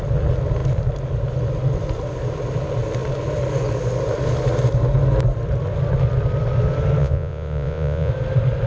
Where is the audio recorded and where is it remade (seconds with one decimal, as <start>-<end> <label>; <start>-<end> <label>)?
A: 0.0-7.0 recorded; 7.0-8.1 remade; 8.1-8.7 recorded